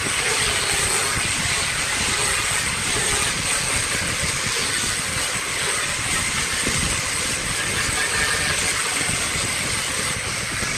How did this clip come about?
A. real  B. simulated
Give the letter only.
A